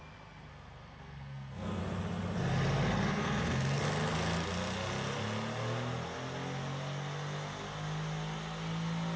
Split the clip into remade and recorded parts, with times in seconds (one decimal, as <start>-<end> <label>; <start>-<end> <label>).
0.0-0.5 recorded; 0.5-1.8 remade; 1.8-3.1 recorded; 3.1-3.8 remade; 3.8-9.2 recorded